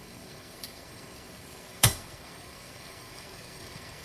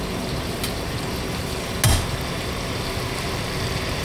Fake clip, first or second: first